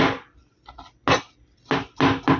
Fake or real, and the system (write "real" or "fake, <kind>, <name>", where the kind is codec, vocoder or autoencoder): real